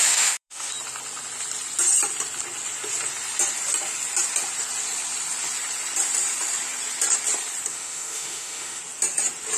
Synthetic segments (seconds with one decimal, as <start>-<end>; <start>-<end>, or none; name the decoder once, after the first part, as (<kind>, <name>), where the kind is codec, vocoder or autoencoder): 0.0-0.7 (autoencoder, DAC-VAE); 7.7-8.8